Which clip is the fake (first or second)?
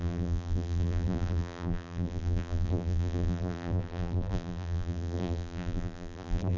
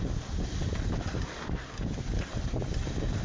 first